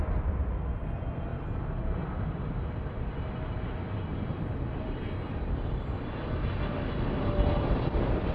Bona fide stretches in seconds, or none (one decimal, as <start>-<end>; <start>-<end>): 0.0-8.3